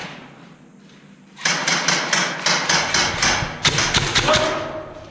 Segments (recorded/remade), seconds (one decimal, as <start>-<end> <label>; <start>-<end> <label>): 0.0-5.1 recorded

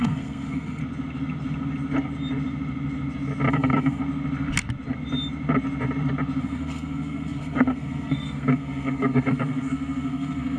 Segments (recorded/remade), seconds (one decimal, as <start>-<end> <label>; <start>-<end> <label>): 0.0-0.8 remade; 0.8-3.5 recorded; 3.5-4.0 remade; 4.0-6.4 recorded; 6.4-10.6 remade

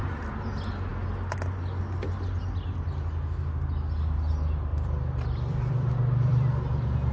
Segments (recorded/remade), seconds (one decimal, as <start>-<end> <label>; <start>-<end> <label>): 0.0-4.7 recorded; 4.7-6.5 remade; 6.5-7.1 recorded

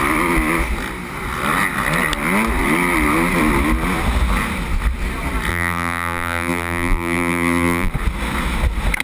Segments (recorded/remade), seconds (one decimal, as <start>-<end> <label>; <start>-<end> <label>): 0.0-5.5 recorded; 5.5-7.9 remade; 7.9-9.0 recorded